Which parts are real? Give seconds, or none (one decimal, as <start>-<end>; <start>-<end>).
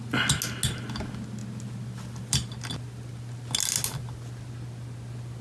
0.0-5.4